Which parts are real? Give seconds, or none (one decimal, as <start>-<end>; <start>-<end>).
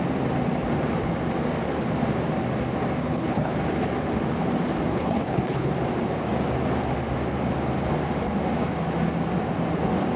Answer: 0.0-3.0; 3.5-4.9; 5.7-10.2